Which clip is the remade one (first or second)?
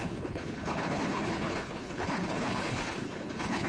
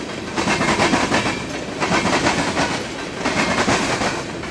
first